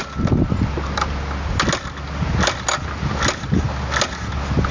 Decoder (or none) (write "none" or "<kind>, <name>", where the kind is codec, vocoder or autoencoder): none